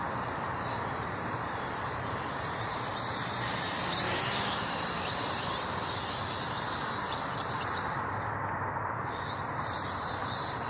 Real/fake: fake